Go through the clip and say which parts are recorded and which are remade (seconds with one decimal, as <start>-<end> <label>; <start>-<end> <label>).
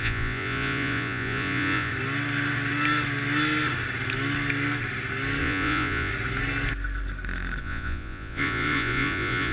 0.0-1.9 remade; 1.9-5.4 recorded; 5.4-6.1 remade; 6.1-7.6 recorded; 7.6-9.5 remade